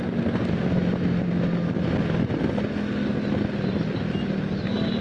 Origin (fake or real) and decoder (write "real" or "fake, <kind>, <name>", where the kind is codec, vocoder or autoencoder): real